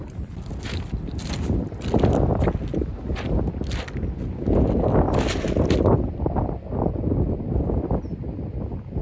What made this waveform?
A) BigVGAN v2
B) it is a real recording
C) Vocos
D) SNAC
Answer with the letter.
B